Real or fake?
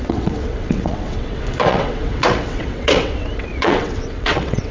fake